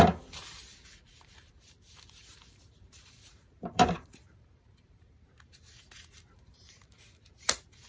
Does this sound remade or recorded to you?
remade